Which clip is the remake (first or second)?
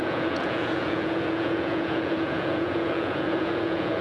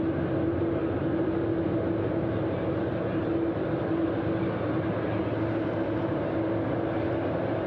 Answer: first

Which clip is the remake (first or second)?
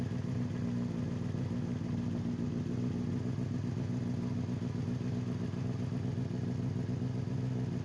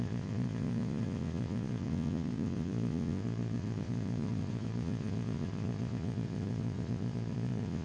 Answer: second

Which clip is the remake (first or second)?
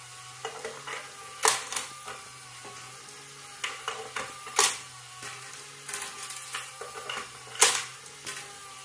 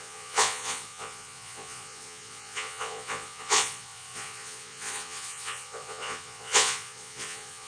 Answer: second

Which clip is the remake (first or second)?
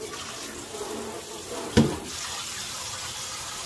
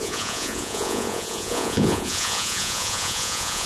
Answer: second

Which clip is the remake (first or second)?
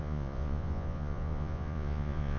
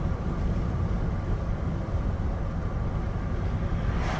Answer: first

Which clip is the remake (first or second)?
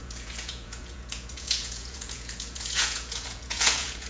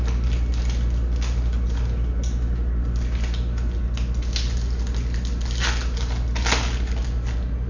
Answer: first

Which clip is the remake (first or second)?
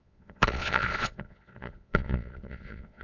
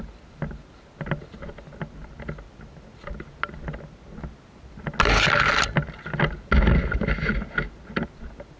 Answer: first